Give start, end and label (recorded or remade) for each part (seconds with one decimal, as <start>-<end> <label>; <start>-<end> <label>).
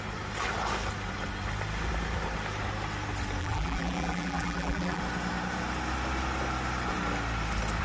0.0-3.4 recorded; 3.4-5.0 remade; 5.0-7.8 recorded